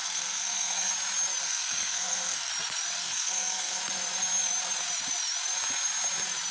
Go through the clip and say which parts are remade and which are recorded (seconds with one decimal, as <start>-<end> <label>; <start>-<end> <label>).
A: 0.0-0.9 remade; 0.9-1.4 recorded; 1.4-2.5 remade; 2.5-3.0 recorded; 3.0-3.8 remade; 3.8-6.5 recorded